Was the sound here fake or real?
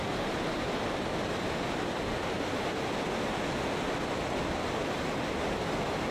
real